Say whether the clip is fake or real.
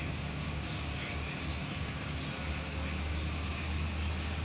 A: real